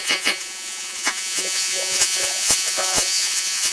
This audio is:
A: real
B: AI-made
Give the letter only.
B